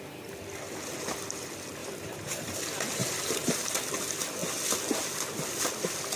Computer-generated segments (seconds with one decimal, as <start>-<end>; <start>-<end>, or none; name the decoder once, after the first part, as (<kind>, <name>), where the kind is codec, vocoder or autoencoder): 1.8-2.5 (vocoder, BigVGAN v2); 3.0-3.6